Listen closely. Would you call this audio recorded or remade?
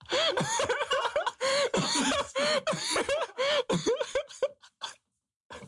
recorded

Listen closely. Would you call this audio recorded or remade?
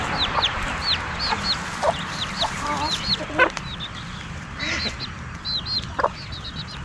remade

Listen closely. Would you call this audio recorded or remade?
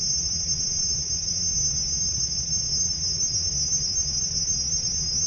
remade